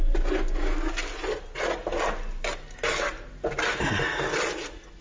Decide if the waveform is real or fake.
real